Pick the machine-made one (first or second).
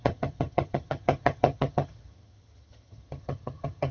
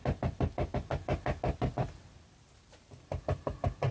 first